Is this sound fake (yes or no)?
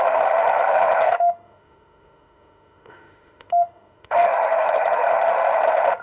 yes